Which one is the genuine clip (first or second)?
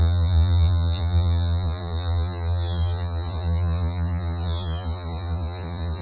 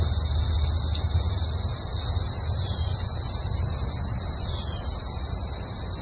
second